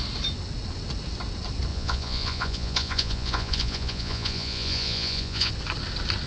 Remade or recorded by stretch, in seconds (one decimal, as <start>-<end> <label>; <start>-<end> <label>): 0.0-1.7 recorded; 1.7-5.5 remade; 5.5-6.3 recorded